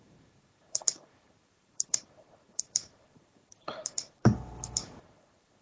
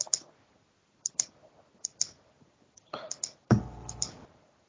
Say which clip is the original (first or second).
second